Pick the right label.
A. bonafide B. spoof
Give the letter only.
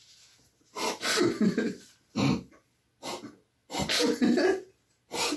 A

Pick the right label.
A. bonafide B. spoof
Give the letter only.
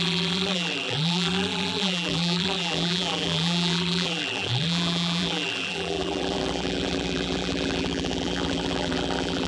B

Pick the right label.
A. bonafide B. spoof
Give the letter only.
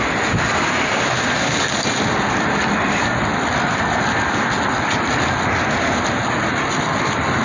A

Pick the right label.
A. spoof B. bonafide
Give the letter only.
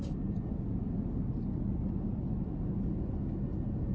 B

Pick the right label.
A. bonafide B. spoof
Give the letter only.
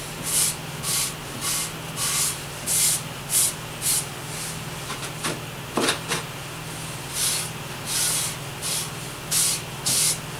A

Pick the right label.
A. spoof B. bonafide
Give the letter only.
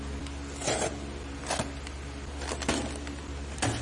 B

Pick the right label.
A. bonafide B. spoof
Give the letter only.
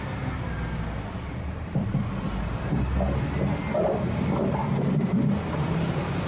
A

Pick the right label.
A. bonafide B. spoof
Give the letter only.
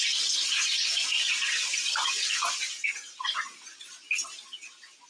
A